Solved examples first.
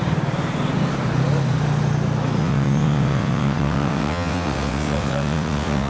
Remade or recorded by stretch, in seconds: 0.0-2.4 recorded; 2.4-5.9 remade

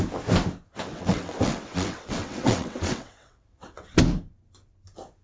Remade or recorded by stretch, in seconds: 0.0-0.9 recorded; 0.9-4.0 remade; 4.0-5.2 recorded